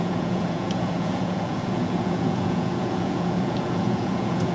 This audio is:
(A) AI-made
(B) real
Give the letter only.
A